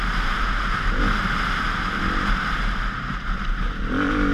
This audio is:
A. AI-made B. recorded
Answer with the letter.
B